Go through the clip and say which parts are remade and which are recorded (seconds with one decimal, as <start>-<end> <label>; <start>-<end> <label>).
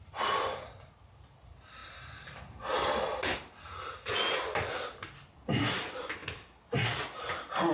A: 0.0-1.8 remade; 1.8-4.3 recorded; 4.3-6.2 remade; 6.2-7.7 recorded